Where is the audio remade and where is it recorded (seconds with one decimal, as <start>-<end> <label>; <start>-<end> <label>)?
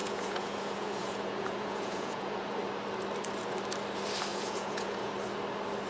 0.0-2.5 remade; 2.5-4.3 recorded; 4.3-5.1 remade; 5.1-5.9 recorded